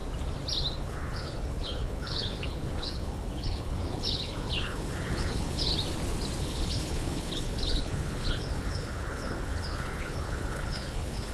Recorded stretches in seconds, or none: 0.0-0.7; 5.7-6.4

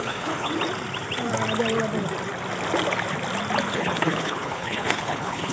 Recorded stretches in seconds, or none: 0.5-3.7